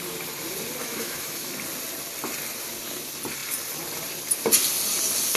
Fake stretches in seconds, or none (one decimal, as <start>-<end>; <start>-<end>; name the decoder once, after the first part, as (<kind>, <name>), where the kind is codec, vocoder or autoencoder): 0.8-1.5 (autoencoder, DAC-VAE)

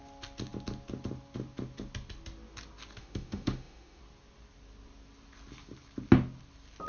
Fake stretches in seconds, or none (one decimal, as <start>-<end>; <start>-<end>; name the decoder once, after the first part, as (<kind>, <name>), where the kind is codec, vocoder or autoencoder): 3.0-4.0 (autoencoder, DAC-VAE)

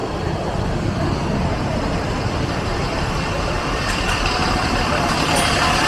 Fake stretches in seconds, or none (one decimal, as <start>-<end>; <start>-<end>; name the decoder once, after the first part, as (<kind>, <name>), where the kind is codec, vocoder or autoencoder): 0.0-5.9 (vocoder, BigVGAN v2)

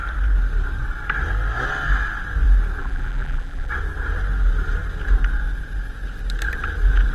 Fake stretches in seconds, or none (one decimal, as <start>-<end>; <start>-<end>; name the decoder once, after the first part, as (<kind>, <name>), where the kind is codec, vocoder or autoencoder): 2.8-3.7 (vocoder, BigVGAN v2)

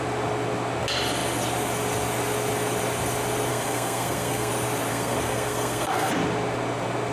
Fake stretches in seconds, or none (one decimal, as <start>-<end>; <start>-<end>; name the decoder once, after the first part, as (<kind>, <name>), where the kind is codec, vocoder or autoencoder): 3.5-4.5 (codec, SNAC); 4.9-6.1

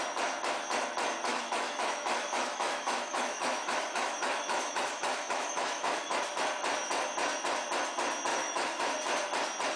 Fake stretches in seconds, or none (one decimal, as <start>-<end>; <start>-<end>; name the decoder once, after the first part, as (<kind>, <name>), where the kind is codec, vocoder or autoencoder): 1.3-6.2 (autoencoder, DAC-VAE); 8.3-8.8

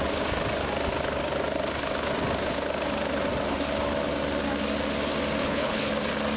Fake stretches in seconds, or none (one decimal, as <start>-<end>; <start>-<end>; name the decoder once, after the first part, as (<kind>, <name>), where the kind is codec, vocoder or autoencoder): 5.4-5.9 (codec, HILCodec)